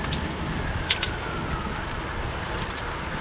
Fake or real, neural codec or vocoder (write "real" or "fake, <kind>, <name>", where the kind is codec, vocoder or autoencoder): real